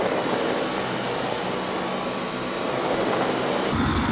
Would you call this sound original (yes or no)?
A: yes